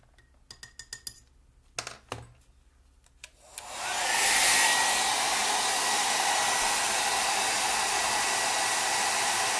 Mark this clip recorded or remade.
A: recorded